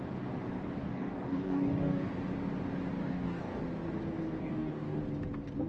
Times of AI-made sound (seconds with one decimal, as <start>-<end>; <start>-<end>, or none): 0.8-2.1; 3.0-3.6; 4.4-5.0